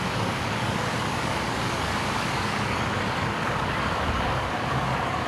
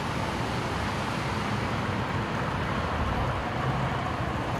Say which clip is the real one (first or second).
second